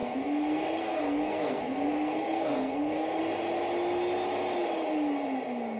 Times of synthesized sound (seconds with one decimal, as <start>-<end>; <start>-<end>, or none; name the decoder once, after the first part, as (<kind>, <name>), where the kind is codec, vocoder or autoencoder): 0.0-3.2 (codec, SNAC)